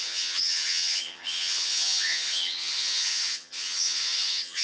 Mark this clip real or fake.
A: fake